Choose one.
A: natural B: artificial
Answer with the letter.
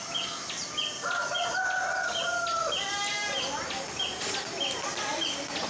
A